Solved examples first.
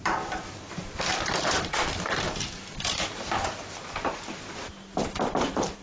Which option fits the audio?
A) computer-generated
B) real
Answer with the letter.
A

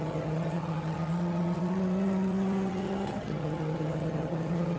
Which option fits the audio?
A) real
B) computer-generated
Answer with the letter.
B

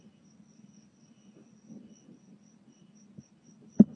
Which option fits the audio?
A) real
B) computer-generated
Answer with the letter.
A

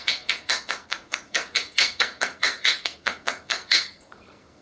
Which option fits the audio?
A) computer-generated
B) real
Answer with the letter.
A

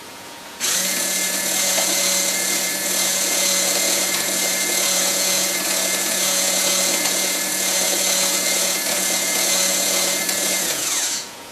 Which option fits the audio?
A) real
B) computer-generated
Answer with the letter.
B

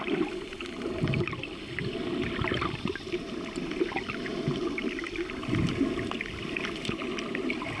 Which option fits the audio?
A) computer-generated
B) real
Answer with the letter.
B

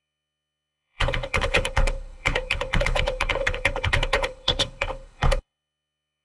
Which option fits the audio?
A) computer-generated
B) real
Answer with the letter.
A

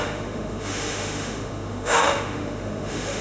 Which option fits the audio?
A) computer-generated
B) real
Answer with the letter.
A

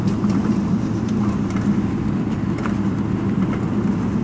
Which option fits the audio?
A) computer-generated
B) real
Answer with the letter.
A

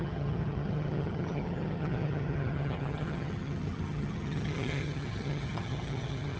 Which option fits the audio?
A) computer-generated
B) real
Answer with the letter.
A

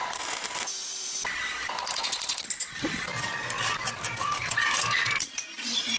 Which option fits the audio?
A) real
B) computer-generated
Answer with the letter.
A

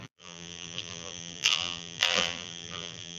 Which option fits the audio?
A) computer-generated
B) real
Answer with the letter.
A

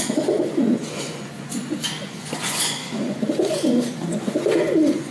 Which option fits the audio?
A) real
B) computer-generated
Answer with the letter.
B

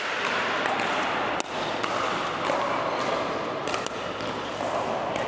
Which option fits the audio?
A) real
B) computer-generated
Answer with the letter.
A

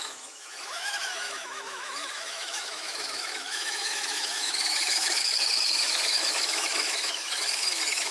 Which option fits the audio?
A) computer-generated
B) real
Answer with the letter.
A